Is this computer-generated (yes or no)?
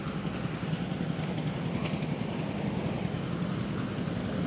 no